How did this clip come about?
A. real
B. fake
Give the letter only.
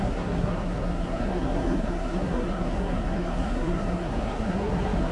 B